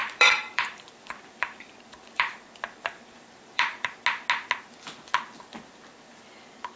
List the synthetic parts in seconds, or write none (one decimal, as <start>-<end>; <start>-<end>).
0.0-4.0